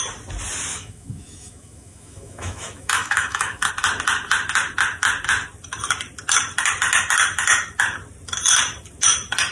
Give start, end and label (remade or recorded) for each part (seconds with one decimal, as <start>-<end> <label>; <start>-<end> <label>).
0.0-0.7 recorded; 0.7-3.7 remade; 3.7-9.5 recorded